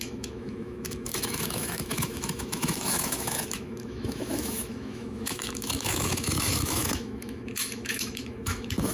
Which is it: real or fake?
fake